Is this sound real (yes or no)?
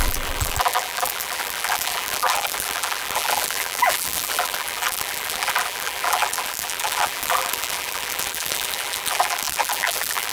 no